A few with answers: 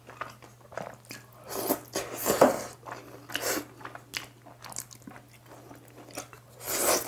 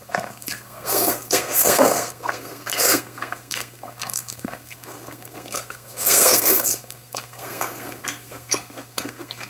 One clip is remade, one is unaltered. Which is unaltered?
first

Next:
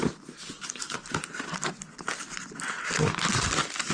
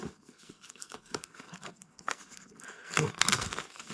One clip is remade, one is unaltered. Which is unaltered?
first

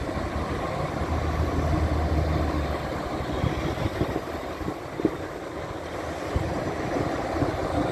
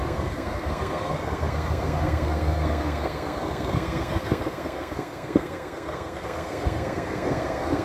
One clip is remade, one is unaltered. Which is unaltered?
first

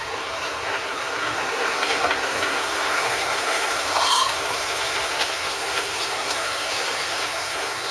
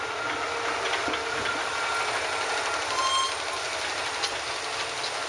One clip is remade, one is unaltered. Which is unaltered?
second